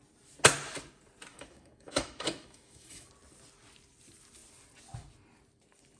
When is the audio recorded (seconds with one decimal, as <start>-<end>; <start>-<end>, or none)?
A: 0.0-1.3; 3.1-6.0